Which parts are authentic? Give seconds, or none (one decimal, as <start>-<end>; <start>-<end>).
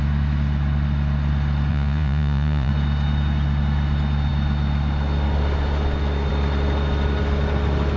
0.0-1.7; 2.7-8.0